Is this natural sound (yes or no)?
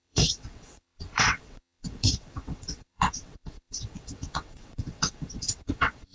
no